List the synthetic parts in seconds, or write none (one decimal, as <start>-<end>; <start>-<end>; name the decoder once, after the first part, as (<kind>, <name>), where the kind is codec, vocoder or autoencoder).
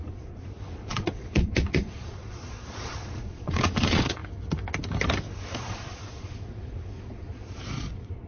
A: 0.0-4.2 (vocoder, Vocos); 5.5-8.3